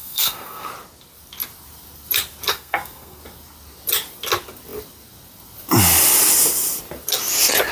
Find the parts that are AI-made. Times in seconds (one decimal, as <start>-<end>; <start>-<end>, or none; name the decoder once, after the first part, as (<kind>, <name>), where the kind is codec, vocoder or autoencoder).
0.0-0.7 (codec, SNAC); 2.5-3.2